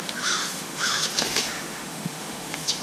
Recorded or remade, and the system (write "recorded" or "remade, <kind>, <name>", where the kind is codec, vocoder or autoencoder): remade, autoencoder, DAC-VAE